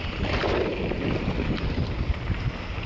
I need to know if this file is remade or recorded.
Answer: recorded